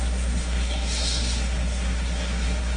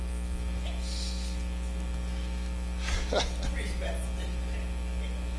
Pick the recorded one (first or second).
second